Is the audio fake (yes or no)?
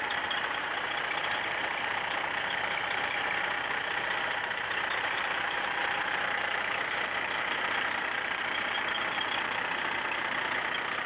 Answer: yes